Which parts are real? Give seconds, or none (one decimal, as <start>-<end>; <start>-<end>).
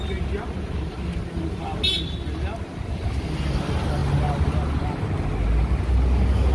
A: 0.0-6.5